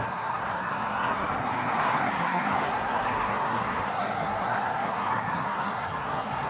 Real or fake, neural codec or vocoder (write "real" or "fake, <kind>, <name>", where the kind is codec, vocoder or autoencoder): fake, codec, SNAC